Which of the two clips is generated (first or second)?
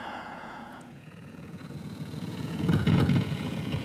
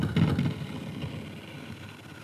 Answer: first